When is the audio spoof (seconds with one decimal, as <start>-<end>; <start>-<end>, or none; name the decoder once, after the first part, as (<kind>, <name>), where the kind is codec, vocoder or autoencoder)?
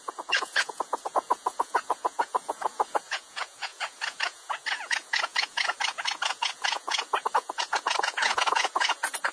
0.0-9.3 (vocoder, Vocos)